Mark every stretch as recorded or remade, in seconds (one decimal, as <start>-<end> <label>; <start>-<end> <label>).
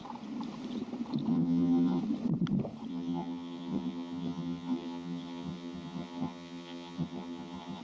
0.0-1.3 recorded; 1.3-2.0 remade; 2.0-2.9 recorded; 2.9-7.8 remade